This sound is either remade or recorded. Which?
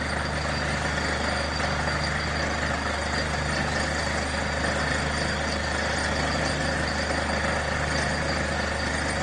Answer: recorded